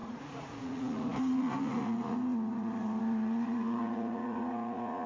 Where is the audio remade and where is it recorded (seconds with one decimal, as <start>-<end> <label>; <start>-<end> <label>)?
0.0-5.1 remade